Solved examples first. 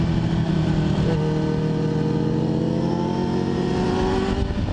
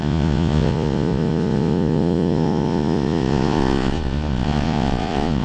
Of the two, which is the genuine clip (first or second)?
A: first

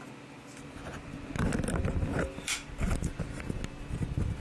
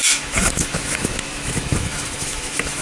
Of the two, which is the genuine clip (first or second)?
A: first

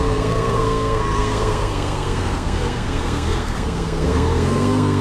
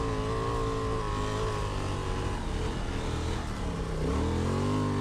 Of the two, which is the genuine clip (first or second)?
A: second